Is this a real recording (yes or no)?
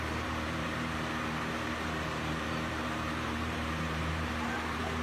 no